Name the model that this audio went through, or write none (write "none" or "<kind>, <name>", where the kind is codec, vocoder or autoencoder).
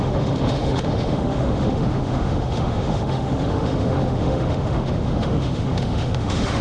autoencoder, DAC-VAE